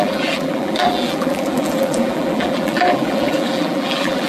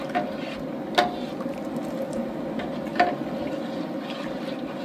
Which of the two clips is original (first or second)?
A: second